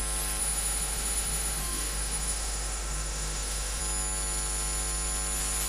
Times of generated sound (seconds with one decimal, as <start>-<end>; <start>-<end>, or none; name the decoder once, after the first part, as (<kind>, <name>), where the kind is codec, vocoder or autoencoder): 0.4-3.8 (autoencoder, DAC-VAE)